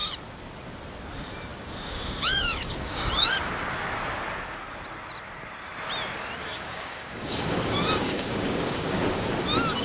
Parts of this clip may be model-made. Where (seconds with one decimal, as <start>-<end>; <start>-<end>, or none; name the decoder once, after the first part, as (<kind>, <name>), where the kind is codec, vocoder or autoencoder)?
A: 1.5-3.5 (codec, DAC); 6.4-9.0